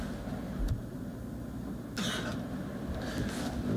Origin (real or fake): real